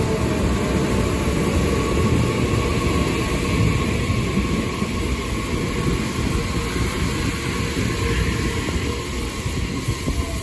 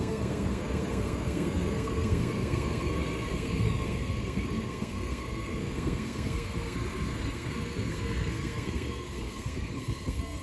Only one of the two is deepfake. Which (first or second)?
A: second